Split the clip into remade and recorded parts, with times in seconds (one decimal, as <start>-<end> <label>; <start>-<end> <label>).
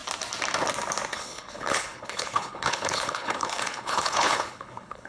0.0-1.1 recorded; 1.1-5.1 remade